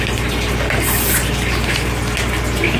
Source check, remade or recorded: recorded